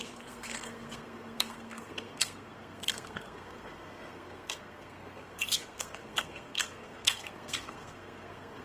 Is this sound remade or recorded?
remade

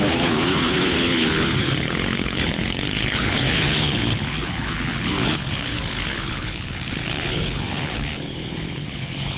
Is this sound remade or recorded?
remade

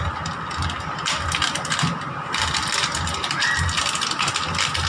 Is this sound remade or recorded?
recorded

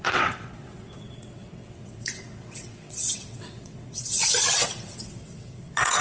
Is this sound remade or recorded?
remade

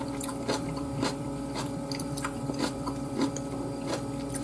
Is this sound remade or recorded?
remade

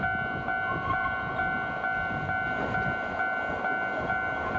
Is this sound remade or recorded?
recorded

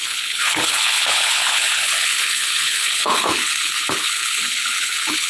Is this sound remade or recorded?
remade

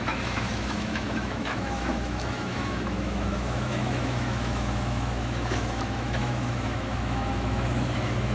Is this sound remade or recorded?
remade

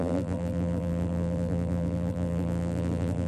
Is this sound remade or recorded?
remade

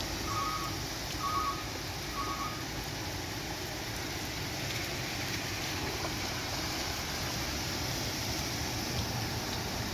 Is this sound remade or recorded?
recorded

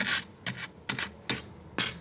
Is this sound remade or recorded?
recorded